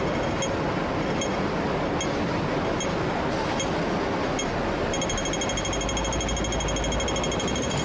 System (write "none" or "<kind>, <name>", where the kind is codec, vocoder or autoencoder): none